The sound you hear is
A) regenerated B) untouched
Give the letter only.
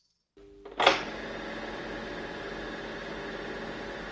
B